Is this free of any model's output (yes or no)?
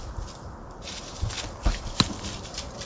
yes